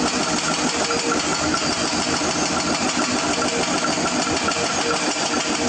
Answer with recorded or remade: recorded